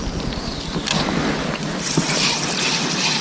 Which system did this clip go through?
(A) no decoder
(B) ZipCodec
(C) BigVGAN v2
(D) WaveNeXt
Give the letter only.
A